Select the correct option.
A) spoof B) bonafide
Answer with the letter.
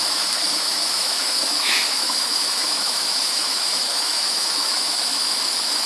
A